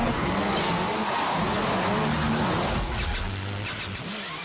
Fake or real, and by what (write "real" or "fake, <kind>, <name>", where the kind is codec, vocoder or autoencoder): real